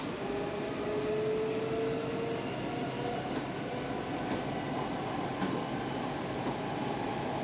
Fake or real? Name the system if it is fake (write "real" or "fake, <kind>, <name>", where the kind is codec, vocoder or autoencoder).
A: real